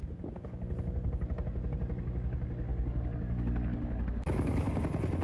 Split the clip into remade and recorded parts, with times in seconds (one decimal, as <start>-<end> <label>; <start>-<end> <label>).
0.0-2.7 recorded; 2.7-4.8 remade; 4.8-5.2 recorded